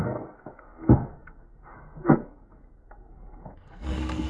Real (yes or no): no